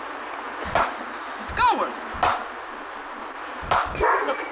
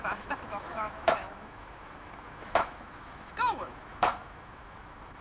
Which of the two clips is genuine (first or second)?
first